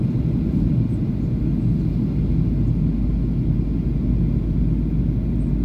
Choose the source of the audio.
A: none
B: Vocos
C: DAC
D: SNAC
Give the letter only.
A